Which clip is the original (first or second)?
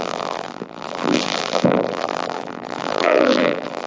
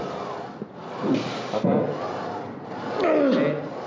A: second